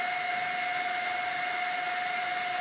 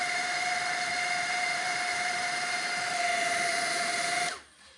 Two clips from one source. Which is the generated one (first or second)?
second